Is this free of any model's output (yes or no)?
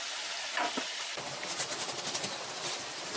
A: yes